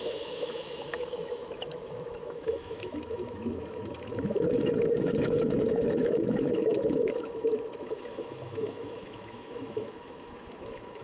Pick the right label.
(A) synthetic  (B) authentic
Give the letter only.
A